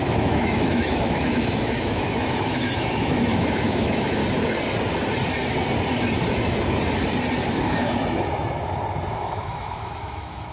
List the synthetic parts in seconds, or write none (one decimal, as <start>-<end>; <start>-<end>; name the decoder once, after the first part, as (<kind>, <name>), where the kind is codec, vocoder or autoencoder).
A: 0.0-4.2 (autoencoder, DAC-VAE); 9.1-10.5